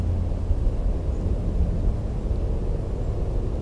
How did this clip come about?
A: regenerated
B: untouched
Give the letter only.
B